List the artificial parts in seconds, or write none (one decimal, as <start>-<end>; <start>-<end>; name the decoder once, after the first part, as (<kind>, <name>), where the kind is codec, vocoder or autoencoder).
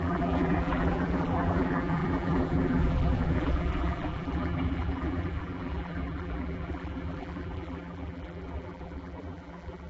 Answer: 0.0-9.9 (vocoder, BigVGAN v2)